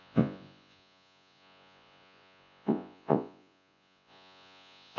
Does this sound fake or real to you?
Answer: fake